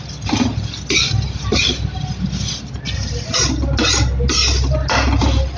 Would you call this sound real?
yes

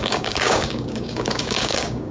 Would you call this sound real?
no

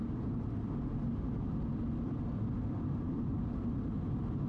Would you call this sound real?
yes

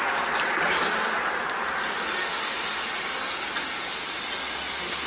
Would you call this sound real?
yes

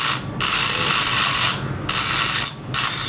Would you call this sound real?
no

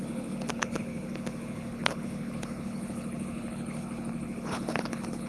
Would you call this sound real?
no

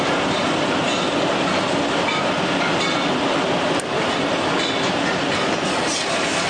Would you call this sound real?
yes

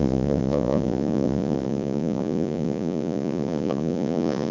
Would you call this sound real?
no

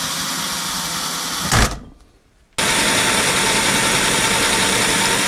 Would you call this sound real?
yes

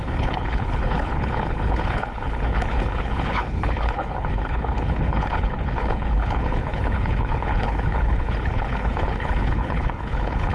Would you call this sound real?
no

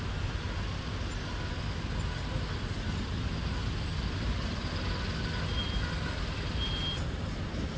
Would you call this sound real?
yes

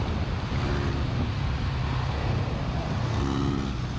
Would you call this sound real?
yes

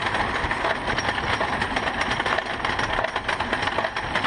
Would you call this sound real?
yes